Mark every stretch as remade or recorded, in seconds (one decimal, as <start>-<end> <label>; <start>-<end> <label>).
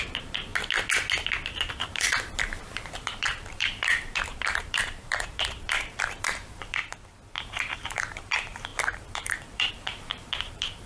0.0-0.5 remade; 0.5-1.7 recorded; 1.7-6.8 remade; 6.8-7.4 recorded; 7.4-10.9 remade